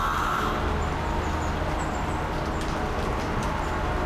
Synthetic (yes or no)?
no